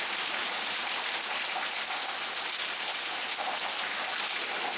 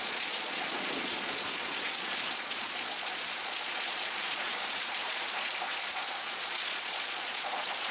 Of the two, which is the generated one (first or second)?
second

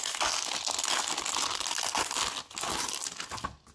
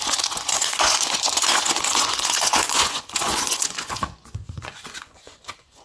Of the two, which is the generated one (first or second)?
second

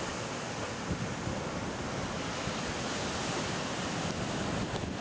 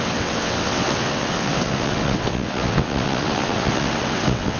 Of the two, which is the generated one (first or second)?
second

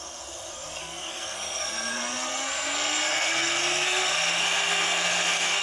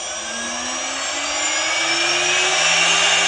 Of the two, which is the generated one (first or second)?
first